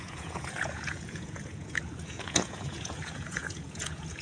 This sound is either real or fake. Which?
fake